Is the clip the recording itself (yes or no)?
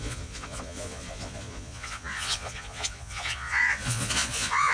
no